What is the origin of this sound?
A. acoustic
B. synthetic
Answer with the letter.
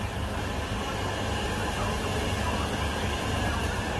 A